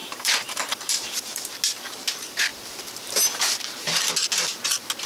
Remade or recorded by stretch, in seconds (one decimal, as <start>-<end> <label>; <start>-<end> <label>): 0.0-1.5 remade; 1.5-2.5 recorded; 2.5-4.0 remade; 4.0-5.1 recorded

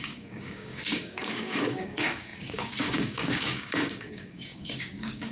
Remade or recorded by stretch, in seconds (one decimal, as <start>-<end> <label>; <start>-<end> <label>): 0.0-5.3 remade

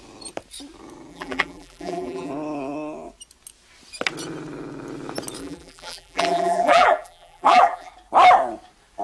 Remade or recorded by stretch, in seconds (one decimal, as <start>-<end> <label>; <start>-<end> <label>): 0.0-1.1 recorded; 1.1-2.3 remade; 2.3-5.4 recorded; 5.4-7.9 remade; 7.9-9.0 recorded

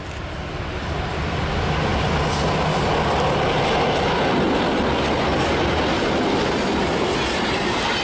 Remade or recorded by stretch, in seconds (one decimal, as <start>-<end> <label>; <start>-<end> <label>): 0.0-8.0 recorded

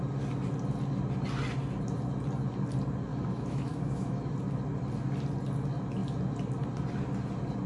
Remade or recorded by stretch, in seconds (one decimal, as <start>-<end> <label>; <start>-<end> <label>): 0.0-3.1 recorded; 3.1-4.3 remade; 4.3-7.7 recorded